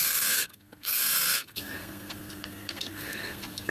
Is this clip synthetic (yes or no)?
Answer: yes